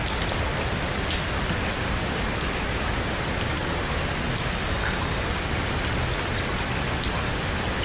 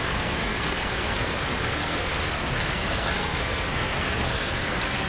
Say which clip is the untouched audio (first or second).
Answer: first